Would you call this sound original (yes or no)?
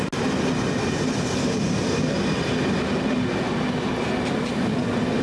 yes